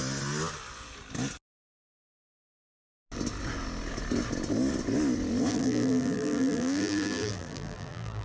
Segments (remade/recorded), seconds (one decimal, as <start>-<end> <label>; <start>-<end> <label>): 0.0-1.8 recorded; 1.8-2.8 remade; 2.8-5.5 recorded; 5.5-8.2 remade